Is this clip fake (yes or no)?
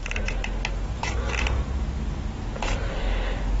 no